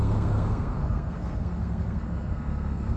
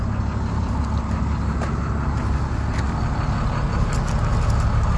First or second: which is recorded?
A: second